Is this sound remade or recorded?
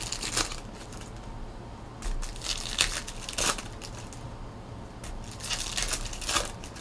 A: recorded